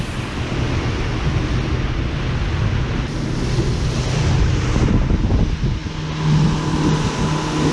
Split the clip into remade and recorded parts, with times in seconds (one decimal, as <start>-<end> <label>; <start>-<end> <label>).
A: 0.0-7.7 recorded